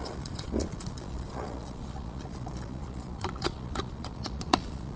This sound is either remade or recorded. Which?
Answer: remade